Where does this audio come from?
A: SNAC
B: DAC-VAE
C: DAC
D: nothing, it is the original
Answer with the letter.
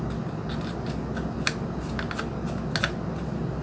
D